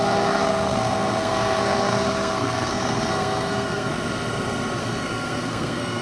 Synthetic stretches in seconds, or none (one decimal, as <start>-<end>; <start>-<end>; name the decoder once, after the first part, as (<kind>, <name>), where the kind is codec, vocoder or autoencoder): 0.0-3.9 (codec, SNAC); 4.8-6.0